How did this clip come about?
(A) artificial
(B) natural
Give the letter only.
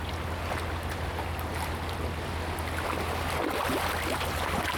B